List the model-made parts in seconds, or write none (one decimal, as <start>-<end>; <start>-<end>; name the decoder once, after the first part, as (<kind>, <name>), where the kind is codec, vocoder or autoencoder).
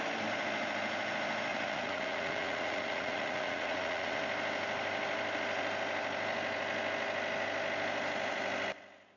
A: 1.5-4.2 (vocoder, Vocos)